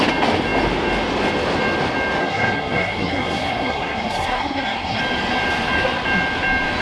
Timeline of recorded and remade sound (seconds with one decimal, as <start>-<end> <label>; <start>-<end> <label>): 0.0-2.2 recorded; 2.2-5.0 remade; 5.0-6.8 recorded